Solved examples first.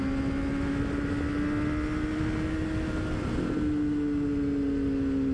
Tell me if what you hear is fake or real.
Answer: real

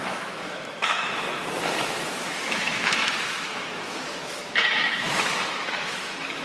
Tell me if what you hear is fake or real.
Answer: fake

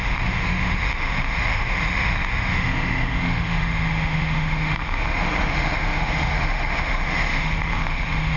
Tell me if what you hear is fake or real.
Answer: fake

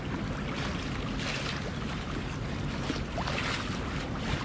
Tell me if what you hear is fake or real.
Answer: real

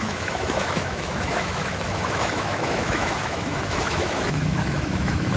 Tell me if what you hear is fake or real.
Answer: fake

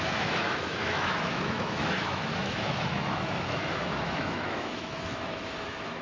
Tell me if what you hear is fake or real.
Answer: fake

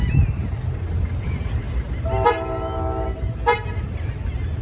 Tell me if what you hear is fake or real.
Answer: real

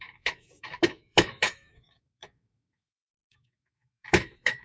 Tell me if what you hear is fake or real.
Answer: fake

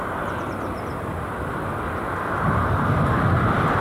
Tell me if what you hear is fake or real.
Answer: real